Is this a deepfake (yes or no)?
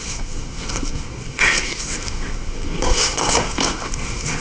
yes